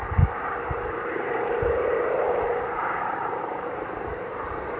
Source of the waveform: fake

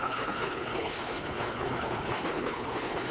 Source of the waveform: fake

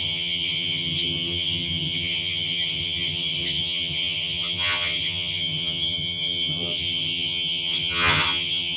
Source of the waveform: fake